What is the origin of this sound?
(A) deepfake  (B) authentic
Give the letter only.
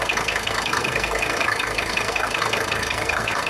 A